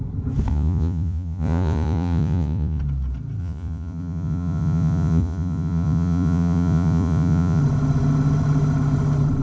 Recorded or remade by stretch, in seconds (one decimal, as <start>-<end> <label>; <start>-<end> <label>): 0.0-0.5 recorded; 0.5-2.8 remade; 2.8-3.4 recorded; 3.4-7.6 remade; 7.6-9.4 recorded